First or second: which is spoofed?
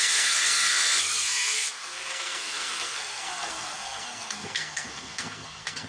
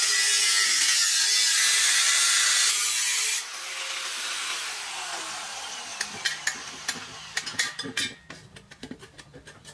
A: first